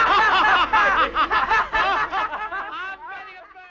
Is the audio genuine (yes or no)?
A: yes